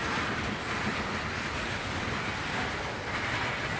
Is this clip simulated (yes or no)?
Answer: no